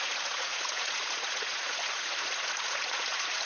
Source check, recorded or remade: remade